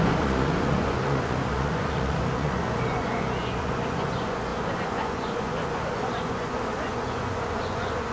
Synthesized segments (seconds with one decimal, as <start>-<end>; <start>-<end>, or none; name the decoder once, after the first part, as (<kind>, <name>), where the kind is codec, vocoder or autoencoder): 0.0-8.1 (vocoder, Vocos)